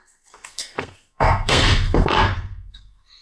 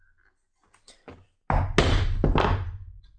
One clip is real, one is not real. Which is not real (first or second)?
first